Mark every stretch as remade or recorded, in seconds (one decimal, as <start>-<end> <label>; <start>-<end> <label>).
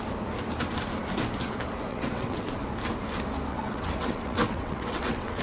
0.0-1.9 recorded; 1.9-2.5 remade; 2.5-3.5 recorded; 3.5-5.4 remade